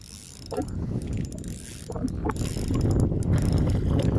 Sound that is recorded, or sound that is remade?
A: recorded